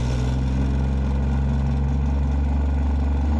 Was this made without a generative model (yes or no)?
yes